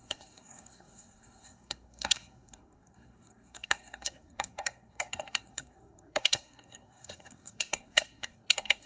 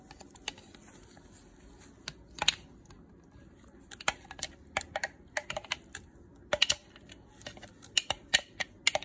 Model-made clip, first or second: first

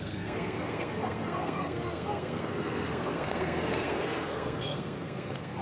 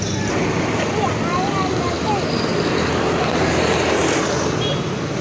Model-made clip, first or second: first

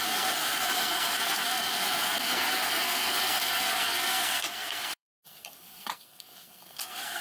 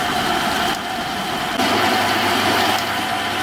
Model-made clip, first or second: first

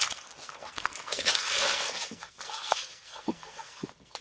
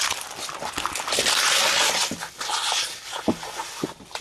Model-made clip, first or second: first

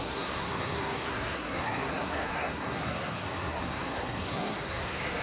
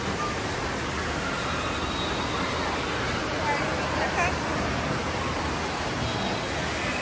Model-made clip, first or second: first